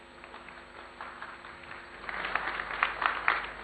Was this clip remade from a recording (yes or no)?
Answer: no